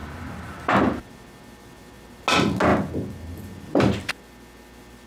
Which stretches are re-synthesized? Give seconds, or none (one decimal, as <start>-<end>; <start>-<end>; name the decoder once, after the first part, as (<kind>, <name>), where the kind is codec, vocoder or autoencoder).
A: none